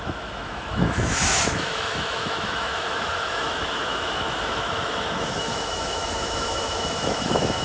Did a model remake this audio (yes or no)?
yes